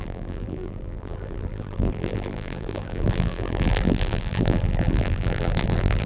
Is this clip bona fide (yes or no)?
no